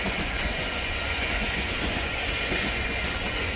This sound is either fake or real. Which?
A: fake